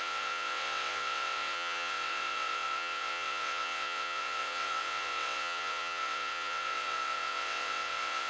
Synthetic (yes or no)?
yes